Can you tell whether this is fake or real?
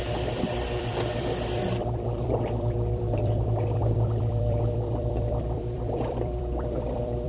fake